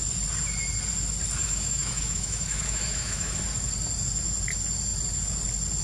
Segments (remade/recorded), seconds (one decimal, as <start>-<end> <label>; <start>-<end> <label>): 0.0-1.4 recorded; 1.4-3.4 remade; 3.4-5.8 recorded